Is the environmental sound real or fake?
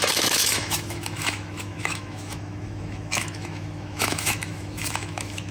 fake